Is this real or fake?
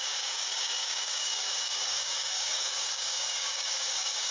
fake